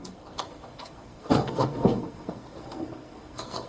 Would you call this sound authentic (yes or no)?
no